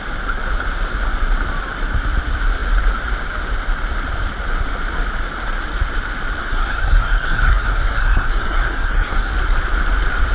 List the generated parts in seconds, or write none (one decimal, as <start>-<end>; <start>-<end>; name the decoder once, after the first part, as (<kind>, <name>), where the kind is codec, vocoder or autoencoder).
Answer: 6.4-9.3 (codec, SNAC)